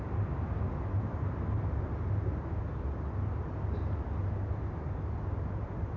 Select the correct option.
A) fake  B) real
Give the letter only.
B